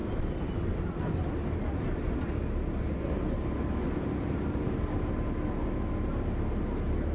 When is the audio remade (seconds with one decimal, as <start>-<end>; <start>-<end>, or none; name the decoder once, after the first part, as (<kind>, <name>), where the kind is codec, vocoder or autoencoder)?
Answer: none